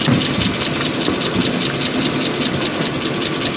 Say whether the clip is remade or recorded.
recorded